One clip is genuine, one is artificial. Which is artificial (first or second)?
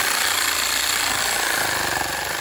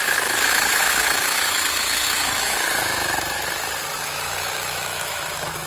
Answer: second